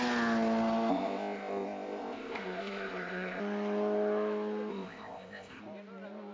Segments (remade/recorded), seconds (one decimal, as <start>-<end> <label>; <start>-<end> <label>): 0.0-0.9 recorded; 0.9-3.4 remade; 3.4-4.7 recorded; 4.7-5.6 remade; 5.6-6.3 recorded